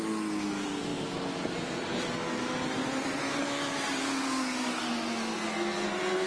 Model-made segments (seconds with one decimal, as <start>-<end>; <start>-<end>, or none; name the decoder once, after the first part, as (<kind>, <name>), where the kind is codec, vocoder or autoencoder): 4.0-4.8 (codec, SNAC)